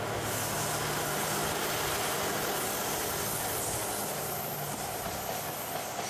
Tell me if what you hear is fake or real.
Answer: real